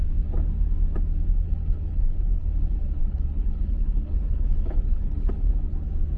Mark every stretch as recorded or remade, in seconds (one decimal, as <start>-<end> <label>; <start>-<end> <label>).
0.0-1.6 recorded; 1.6-2.5 remade; 2.5-3.0 recorded; 3.0-5.6 remade; 5.6-6.2 recorded